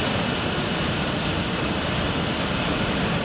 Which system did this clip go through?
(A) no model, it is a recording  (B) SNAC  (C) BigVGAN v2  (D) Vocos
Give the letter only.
A